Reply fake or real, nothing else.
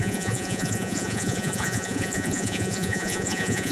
fake